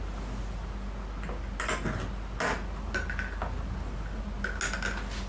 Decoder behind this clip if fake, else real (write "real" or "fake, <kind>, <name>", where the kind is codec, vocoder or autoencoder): real